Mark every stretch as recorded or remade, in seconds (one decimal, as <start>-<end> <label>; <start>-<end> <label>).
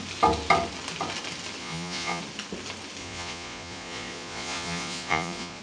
0.0-1.6 recorded; 1.6-2.2 remade; 2.2-3.0 recorded; 3.0-5.6 remade